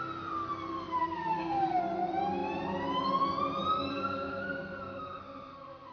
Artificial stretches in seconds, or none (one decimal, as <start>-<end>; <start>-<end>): 1.0-1.8; 3.9-5.9

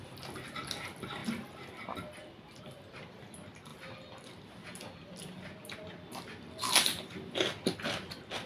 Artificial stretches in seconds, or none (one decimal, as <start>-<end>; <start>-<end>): none